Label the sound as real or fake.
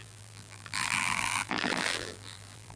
fake